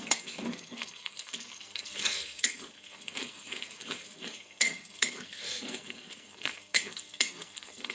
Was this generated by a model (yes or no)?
yes